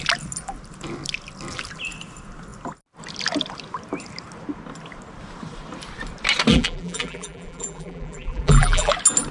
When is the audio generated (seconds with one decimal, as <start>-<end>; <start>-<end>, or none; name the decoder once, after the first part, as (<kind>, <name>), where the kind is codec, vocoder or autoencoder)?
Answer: 6.5-8.9 (vocoder, BigVGAN v2)